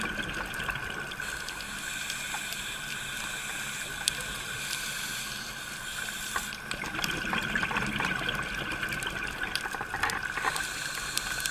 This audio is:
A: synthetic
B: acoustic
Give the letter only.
B